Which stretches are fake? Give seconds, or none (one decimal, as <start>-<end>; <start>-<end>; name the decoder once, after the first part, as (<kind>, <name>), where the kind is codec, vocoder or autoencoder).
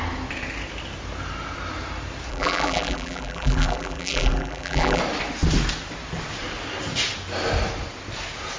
2.3-5.0 (vocoder, BigVGAN v2)